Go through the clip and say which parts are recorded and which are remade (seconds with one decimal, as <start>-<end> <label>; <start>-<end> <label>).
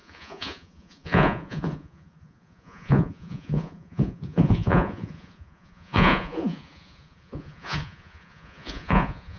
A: 0.0-9.4 remade